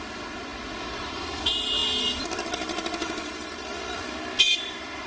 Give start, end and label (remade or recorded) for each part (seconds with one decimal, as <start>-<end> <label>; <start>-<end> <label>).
0.0-1.8 recorded; 1.8-5.1 remade